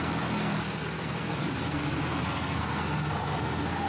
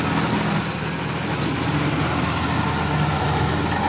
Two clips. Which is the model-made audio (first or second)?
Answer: first